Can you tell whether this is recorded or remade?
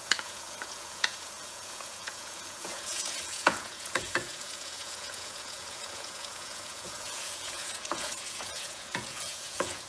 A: remade